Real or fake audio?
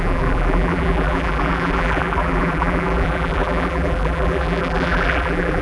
fake